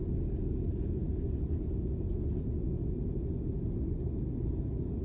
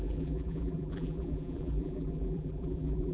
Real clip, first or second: first